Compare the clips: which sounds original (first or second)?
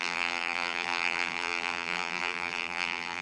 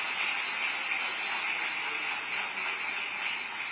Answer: second